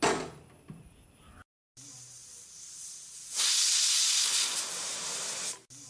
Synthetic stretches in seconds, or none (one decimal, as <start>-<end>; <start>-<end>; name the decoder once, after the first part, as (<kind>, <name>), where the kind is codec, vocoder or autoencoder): none